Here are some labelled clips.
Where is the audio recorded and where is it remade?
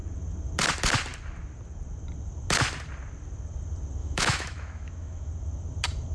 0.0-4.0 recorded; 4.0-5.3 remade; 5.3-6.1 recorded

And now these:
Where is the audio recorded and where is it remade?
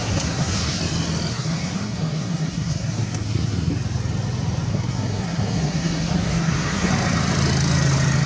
0.0-0.8 remade; 0.8-1.3 recorded; 1.3-3.7 remade; 3.7-4.7 recorded; 4.7-6.9 remade; 6.9-8.3 recorded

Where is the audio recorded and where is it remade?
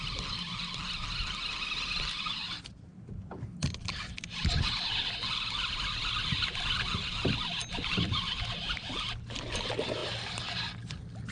0.0-11.3 recorded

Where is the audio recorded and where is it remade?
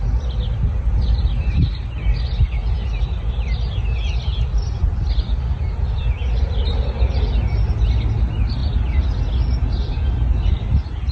0.0-11.1 recorded